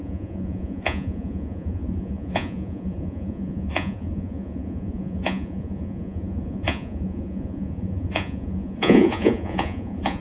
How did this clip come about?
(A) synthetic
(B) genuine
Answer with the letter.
A